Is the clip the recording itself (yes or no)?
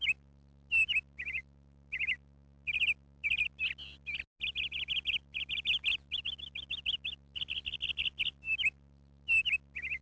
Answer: yes